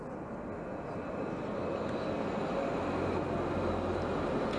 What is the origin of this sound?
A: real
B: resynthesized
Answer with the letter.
A